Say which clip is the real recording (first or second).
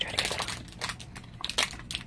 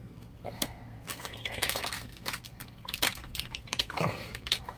first